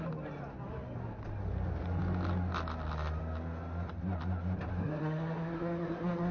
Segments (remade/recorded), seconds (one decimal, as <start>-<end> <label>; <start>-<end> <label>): 0.0-4.7 recorded; 4.7-6.3 remade